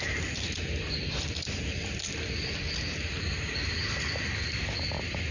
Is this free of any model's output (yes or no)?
yes